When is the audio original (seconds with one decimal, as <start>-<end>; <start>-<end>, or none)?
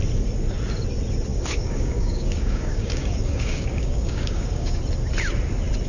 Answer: 0.0-1.3; 4.8-5.9